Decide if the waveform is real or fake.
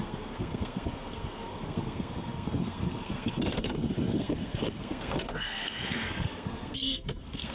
fake